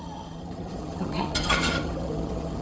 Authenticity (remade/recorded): remade